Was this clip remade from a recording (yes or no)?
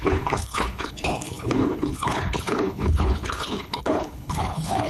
yes